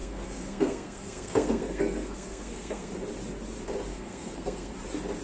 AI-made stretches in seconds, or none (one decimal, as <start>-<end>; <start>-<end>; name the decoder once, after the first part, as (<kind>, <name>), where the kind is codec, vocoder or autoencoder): 0.0-2.9 (codec, SNAC); 3.9-4.7